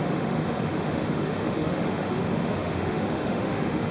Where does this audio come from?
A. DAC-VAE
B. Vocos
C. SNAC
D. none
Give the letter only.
A